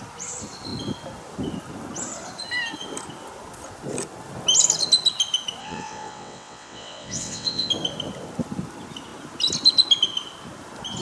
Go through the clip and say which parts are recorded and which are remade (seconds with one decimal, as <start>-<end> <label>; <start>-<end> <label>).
0.0-5.6 recorded; 5.6-7.7 remade; 7.7-11.0 recorded